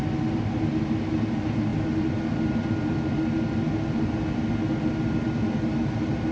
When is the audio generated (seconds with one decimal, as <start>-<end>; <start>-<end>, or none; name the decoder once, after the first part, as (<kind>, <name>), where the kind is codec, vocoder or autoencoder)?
none